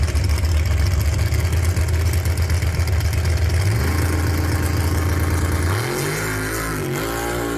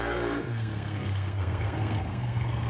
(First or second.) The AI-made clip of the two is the second